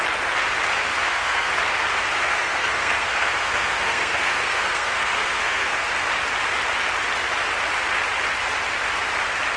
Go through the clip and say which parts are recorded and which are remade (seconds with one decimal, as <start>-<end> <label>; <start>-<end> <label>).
0.0-0.9 recorded; 0.9-1.5 remade; 1.5-2.2 recorded; 2.2-5.9 remade; 5.9-9.6 recorded